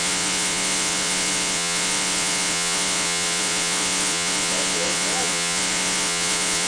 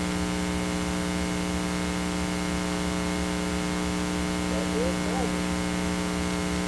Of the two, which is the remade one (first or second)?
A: first